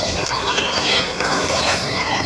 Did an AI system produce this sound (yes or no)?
yes